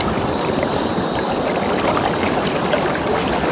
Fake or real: real